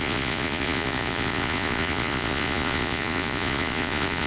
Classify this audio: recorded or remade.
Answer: remade